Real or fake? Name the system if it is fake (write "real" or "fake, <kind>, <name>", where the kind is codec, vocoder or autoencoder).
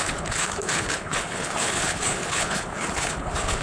fake, codec, HILCodec